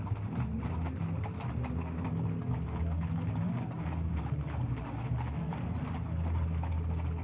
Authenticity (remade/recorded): recorded